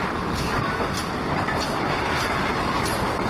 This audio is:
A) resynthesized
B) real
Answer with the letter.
B